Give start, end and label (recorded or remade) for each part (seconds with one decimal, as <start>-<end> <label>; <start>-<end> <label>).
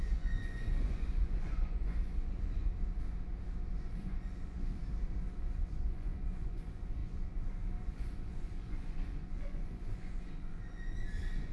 0.0-2.7 remade; 2.7-3.8 recorded; 3.8-4.8 remade; 4.8-5.4 recorded; 5.4-11.5 remade